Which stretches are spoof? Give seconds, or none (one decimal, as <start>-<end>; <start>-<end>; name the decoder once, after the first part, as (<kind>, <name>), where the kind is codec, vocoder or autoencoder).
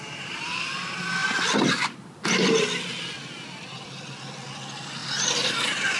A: none